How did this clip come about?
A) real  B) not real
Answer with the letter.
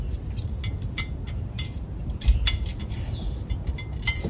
A